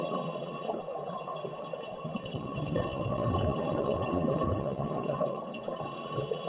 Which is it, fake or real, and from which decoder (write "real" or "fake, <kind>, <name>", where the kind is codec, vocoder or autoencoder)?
fake, vocoder, WaveNeXt